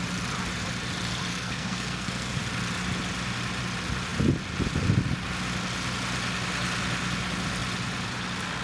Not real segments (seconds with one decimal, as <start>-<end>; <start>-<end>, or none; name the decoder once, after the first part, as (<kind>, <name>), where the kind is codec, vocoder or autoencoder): 1.3-2.4 (codec, SNAC)